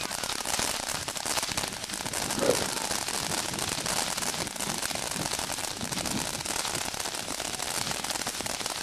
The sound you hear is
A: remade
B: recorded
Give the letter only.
B